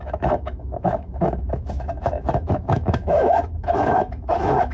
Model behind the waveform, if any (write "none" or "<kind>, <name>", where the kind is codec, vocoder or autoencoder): autoencoder, DAC-VAE